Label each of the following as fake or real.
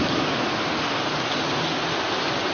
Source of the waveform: real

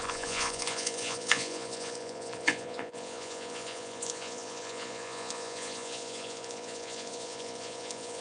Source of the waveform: fake